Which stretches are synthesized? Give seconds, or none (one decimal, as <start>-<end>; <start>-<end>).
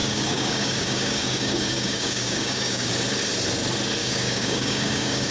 0.0-2.9; 4.0-5.3